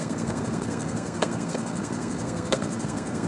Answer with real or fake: fake